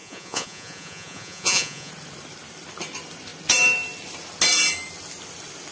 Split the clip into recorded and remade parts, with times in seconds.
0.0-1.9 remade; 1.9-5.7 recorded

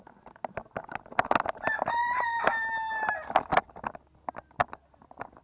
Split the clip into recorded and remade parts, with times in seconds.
0.0-5.4 recorded

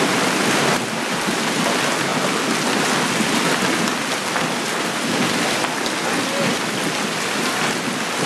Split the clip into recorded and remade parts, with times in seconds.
0.0-8.3 recorded

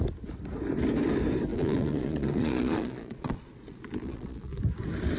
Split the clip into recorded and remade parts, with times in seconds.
0.0-1.5 recorded; 1.5-4.6 remade; 4.6-5.2 recorded

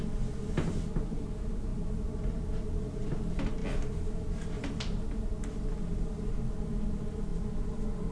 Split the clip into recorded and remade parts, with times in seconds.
0.0-8.1 recorded

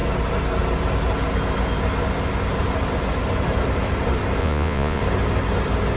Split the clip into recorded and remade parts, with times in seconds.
0.0-4.4 recorded; 4.4-5.0 remade; 5.0-6.0 recorded

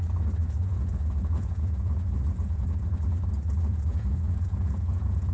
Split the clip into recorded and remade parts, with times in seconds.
0.0-0.4 recorded; 0.4-2.7 remade; 2.7-3.7 recorded; 3.7-5.3 remade